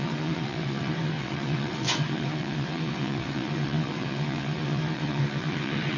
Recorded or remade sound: remade